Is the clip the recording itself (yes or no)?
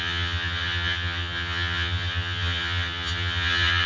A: no